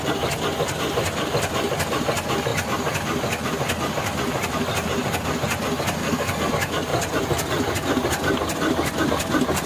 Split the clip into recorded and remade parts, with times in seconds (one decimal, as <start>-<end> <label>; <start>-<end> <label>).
0.0-6.0 recorded; 6.0-6.5 remade; 6.5-9.7 recorded